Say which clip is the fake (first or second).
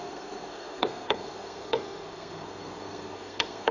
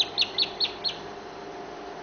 first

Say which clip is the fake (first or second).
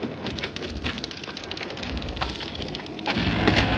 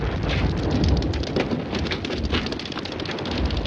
first